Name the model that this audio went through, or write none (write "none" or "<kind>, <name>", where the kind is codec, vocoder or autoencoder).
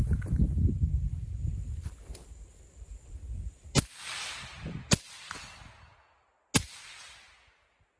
none